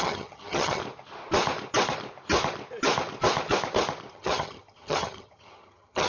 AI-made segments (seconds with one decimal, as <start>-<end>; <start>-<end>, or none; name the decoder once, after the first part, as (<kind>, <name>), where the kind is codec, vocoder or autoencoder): 0.0-0.8 (vocoder, HiFi-GAN); 4.1-6.1